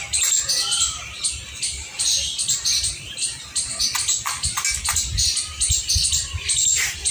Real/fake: real